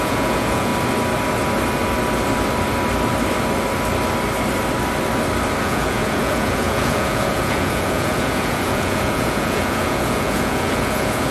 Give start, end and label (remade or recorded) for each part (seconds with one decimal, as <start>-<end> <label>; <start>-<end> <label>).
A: 0.0-0.7 remade; 0.7-5.6 recorded; 5.6-11.3 remade